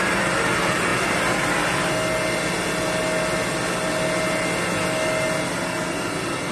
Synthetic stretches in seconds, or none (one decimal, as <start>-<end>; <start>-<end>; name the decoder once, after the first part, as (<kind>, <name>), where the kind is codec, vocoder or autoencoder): none